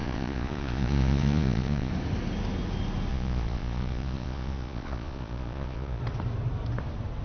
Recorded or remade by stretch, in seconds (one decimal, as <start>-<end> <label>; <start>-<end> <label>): 0.0-1.9 remade; 1.9-3.1 recorded; 3.1-6.0 remade; 6.0-7.2 recorded